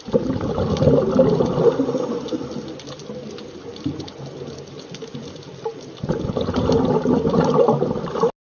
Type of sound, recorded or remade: recorded